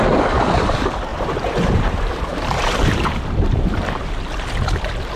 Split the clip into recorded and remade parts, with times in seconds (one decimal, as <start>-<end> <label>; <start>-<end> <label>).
0.0-1.1 recorded; 1.1-4.2 remade; 4.2-5.2 recorded

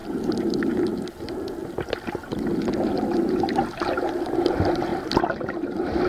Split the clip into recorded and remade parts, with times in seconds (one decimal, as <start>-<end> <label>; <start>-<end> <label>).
0.0-0.7 recorded; 0.7-1.6 remade; 1.6-4.4 recorded; 4.4-4.9 remade; 4.9-5.5 recorded; 5.5-6.1 remade

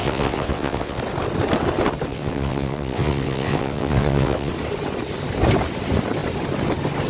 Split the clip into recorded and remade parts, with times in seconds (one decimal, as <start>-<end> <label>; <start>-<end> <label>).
0.0-1.0 remade; 1.0-2.1 recorded; 2.1-4.5 remade; 4.5-7.1 recorded